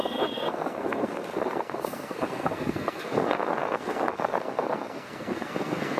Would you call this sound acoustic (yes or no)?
no